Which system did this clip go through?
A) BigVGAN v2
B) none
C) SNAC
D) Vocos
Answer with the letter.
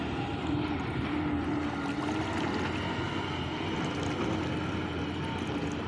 B